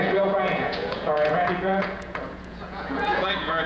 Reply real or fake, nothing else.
fake